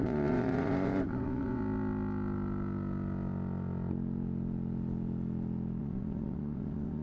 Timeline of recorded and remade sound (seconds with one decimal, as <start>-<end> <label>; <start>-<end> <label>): 0.0-1.6 remade; 1.6-5.8 recorded; 5.8-7.0 remade